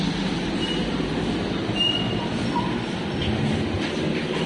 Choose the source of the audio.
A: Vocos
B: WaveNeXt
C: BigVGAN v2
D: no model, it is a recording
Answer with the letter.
D